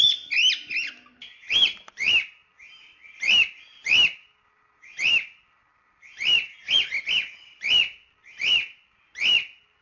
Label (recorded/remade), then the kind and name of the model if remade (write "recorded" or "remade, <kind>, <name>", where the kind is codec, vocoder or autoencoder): recorded